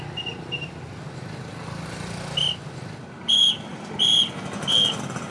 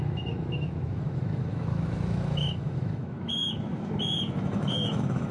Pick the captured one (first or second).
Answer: first